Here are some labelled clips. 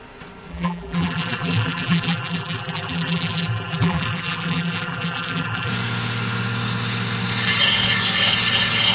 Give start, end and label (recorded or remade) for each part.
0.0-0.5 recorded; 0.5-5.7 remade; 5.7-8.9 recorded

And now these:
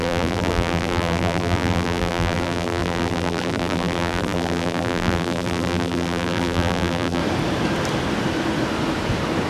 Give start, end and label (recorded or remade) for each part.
0.0-7.2 remade; 7.2-9.5 recorded

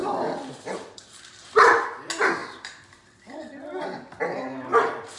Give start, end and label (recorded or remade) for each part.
0.0-1.8 remade; 1.8-2.4 recorded; 2.4-3.4 remade; 3.4-4.7 recorded; 4.7-5.2 remade

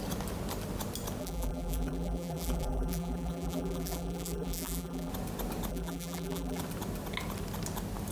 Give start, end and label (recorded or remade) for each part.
0.0-1.2 recorded; 1.2-5.1 remade; 5.1-5.7 recorded; 5.7-6.6 remade; 6.6-8.1 recorded